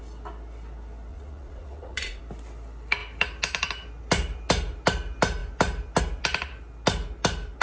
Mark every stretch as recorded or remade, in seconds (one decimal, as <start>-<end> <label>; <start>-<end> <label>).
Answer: 0.0-1.1 recorded; 1.1-2.2 remade; 2.2-7.6 recorded